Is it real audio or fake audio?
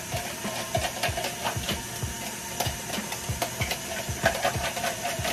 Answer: real